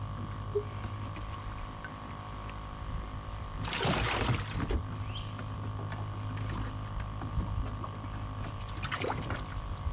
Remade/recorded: recorded